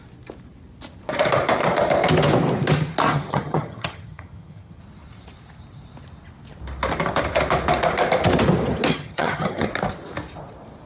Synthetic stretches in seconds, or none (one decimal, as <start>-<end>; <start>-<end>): 3.1-4.8; 8.9-9.7